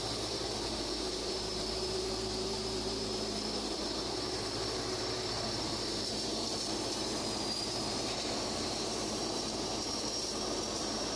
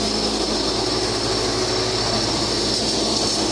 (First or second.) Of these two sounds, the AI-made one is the first